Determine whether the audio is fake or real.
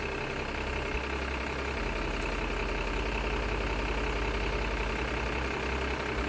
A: real